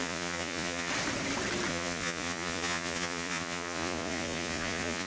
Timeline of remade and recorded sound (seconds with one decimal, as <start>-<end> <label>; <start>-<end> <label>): 0.0-0.9 remade; 0.9-1.7 recorded; 1.7-5.1 remade